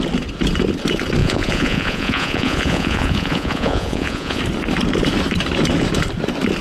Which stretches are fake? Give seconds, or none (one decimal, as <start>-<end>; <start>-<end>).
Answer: 1.2-4.4